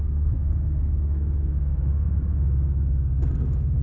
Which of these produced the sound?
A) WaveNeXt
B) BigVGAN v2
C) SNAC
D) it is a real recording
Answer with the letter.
C